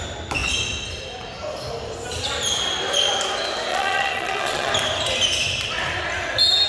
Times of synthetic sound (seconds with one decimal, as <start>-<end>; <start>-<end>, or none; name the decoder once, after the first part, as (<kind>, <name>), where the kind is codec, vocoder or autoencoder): 3.7-4.7 (vocoder, Vocos)